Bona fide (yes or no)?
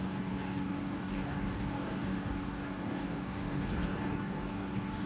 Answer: no